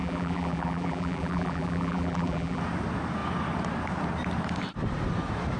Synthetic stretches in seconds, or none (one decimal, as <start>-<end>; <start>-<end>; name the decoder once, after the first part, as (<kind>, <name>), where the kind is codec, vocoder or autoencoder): 0.0-2.6 (vocoder, BigVGAN v2)